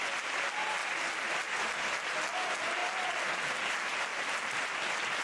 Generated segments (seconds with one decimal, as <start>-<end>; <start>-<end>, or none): 0.8-1.9; 4.1-5.2